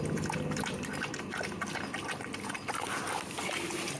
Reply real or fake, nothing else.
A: real